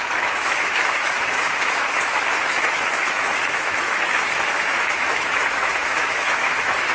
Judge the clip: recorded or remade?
remade